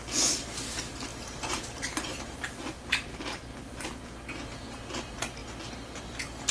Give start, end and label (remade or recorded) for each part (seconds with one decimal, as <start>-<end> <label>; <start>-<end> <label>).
0.0-1.1 recorded; 1.1-3.2 remade; 3.2-6.5 recorded